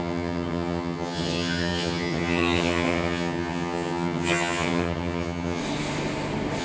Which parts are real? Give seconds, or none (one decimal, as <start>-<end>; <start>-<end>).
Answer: 5.6-6.6